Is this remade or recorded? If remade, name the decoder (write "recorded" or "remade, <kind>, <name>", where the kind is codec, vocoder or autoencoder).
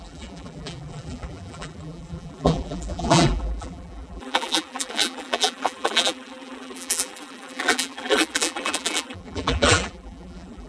remade, vocoder, BigVGAN v2